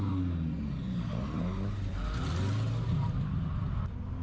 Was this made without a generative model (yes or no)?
yes